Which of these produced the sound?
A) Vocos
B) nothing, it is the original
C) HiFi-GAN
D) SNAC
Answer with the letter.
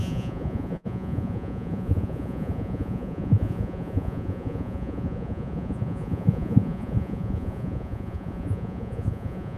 A